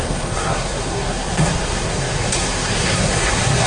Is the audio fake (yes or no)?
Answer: yes